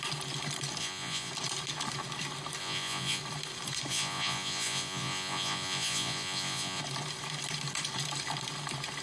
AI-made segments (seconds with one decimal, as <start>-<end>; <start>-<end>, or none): 0.8-1.3; 2.6-3.2; 3.9-6.8